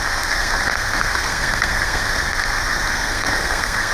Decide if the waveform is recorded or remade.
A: remade